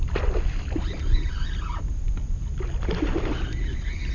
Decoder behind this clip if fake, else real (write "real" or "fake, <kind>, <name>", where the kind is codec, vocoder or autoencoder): real